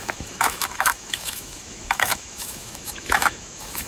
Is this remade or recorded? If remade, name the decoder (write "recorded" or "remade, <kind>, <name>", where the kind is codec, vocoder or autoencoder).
remade, autoencoder, DAC-VAE